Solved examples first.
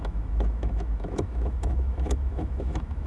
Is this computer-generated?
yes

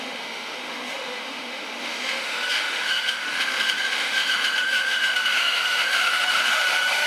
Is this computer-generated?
yes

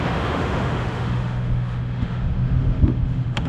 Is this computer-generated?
yes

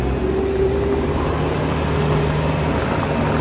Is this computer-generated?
no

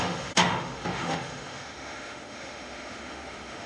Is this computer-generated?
yes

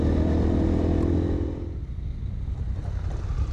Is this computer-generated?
no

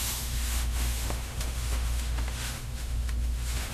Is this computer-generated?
yes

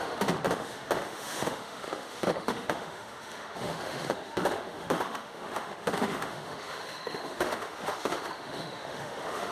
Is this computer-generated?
yes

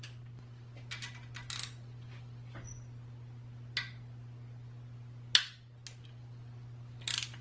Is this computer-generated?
no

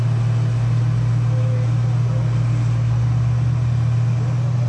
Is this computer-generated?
no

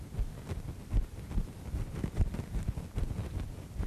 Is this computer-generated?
no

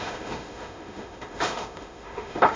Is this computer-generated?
yes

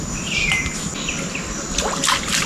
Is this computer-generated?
no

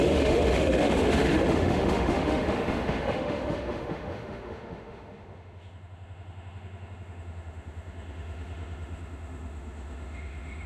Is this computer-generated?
yes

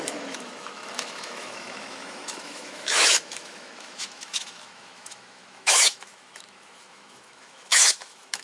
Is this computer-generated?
yes